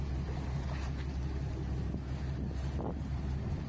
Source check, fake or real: real